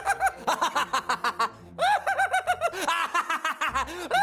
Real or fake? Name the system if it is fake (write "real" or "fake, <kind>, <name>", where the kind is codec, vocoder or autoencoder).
real